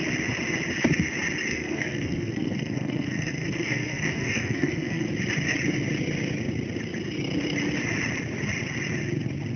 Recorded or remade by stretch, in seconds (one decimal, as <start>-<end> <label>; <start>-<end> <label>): 0.0-1.5 recorded; 1.5-5.1 remade; 5.1-9.6 recorded